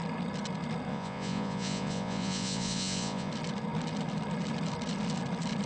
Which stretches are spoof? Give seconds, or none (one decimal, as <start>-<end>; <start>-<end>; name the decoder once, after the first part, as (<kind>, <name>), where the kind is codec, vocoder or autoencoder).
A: 0.9-3.3 (vocoder, Vocos)